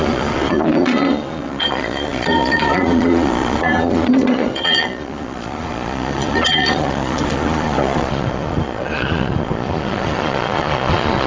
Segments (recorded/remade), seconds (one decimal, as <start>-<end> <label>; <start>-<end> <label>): 0.0-11.3 remade